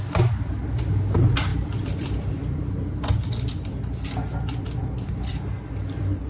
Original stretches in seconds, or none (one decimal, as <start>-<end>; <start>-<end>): 0.0-1.5; 2.7-6.3